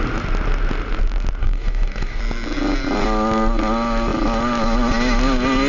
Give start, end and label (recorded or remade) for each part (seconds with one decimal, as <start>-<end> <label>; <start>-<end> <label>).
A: 0.0-1.4 recorded; 1.4-2.2 remade; 2.2-5.7 recorded